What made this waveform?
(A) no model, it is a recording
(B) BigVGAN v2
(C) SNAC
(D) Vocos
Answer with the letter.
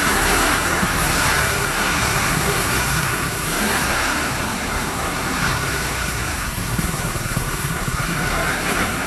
C